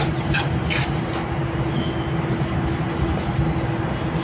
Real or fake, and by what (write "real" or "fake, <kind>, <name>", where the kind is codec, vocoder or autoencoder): real